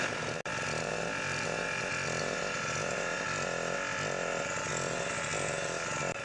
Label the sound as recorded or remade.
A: recorded